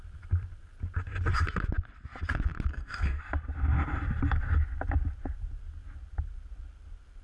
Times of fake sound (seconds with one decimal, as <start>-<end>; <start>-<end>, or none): 2.7-3.2